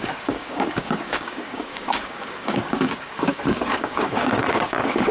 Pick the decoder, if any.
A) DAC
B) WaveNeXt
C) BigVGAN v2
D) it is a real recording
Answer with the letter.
A